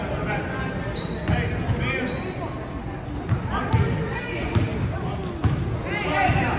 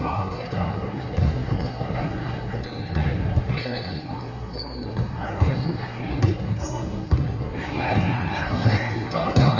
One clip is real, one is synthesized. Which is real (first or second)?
first